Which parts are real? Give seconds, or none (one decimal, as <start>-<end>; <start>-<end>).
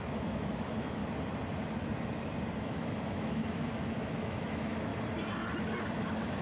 1.0-2.6; 4.9-5.8